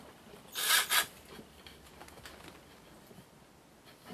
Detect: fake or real real